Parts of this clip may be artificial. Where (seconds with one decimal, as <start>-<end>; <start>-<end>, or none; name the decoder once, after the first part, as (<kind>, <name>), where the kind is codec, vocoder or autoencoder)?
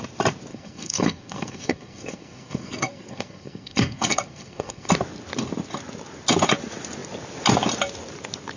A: 0.5-4.9 (codec, SNAC)